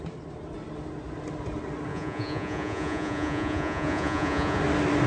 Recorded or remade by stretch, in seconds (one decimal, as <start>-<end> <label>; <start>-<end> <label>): 0.0-1.9 recorded; 1.9-4.6 remade; 4.6-5.1 recorded